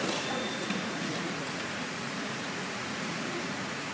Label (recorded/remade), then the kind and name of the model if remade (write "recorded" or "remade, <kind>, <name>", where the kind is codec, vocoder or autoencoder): remade, vocoder, Vocos